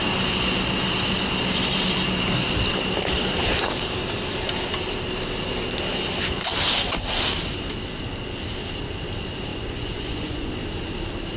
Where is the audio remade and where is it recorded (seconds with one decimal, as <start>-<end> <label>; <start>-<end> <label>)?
0.0-9.5 recorded; 9.5-10.5 remade; 10.5-11.4 recorded